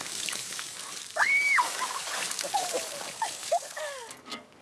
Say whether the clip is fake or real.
fake